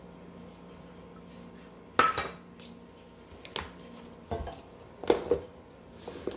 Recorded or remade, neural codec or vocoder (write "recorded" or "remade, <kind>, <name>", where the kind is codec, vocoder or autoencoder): recorded